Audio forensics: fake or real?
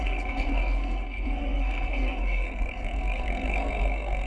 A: fake